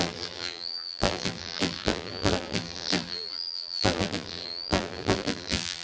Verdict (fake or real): fake